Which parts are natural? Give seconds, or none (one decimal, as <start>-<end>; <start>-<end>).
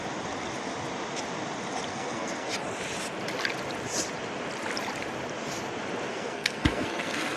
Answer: 0.0-1.9; 2.5-6.1